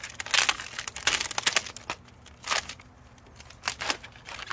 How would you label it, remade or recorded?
recorded